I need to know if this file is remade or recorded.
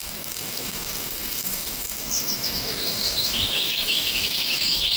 remade